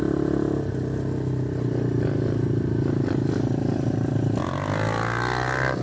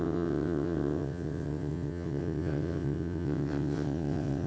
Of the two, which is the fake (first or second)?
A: second